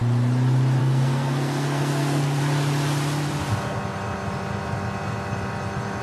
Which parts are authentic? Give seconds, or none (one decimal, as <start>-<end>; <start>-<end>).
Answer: 0.0-0.8; 2.4-6.0